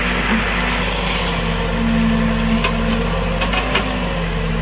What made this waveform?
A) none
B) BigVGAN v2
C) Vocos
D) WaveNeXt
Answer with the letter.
A